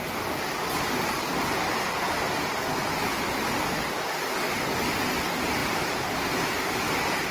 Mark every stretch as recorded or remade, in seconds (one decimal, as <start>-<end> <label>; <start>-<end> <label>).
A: 0.0-5.6 recorded; 5.6-6.3 remade; 6.3-7.3 recorded